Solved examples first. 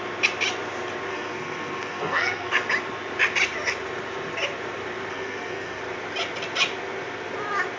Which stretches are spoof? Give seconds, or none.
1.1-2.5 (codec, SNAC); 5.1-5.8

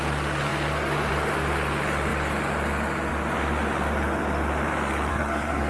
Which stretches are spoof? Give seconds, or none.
5.1-5.7 (codec, SNAC)

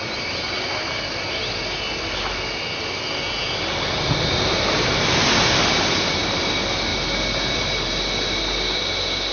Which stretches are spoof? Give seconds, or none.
none